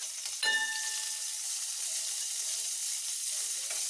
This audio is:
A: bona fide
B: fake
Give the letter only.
A